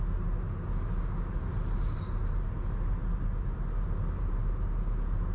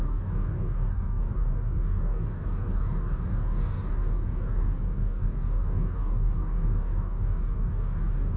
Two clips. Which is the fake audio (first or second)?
second